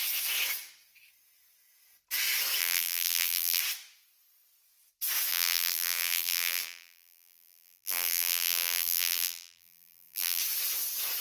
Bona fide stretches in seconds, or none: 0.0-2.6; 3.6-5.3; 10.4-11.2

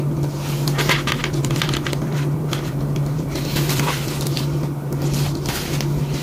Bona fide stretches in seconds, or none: 0.0-1.2; 4.4-6.2

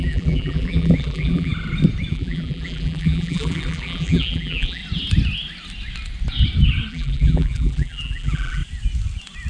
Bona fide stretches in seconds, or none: 1.5-2.1; 4.8-6.9; 8.6-9.5

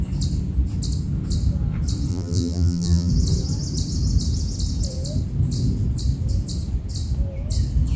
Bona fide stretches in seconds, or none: 0.0-2.1; 3.1-8.0

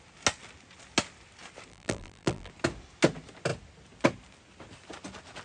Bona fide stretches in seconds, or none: 0.0-1.7; 2.5-5.4